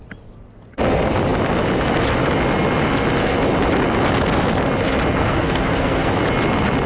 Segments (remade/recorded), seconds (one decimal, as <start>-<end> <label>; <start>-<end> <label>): 0.0-5.2 recorded; 5.2-6.1 remade; 6.1-6.9 recorded